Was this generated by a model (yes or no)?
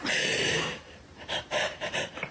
yes